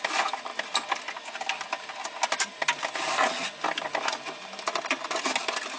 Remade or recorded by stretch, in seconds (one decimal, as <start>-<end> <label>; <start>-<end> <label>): 0.0-5.8 recorded